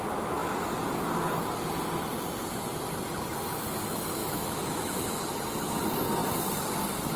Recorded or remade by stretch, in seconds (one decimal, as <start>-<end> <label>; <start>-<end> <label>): 0.0-4.2 recorded; 4.2-5.2 remade; 5.2-7.2 recorded